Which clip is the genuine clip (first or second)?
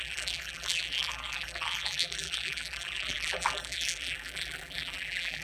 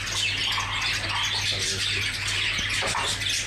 second